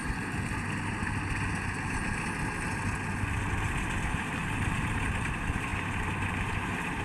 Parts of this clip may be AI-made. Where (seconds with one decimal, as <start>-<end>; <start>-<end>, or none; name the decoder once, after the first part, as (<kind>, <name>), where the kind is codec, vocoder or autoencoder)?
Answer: 4.2-7.0 (vocoder, BigVGAN v2)